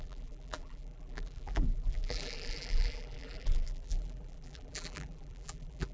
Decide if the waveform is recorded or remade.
remade